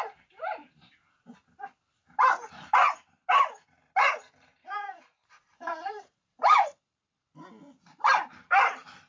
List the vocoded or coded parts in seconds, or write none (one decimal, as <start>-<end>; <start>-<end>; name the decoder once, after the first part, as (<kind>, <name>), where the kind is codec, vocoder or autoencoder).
4.6-7.7 (vocoder, BigVGAN v2)